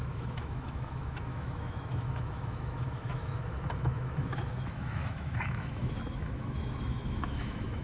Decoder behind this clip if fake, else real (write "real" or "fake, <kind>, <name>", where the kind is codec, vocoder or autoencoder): fake, autoencoder, DAC-VAE